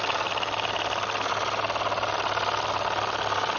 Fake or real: real